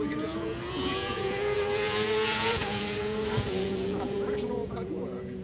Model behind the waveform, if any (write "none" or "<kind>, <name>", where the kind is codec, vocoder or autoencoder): vocoder, Vocos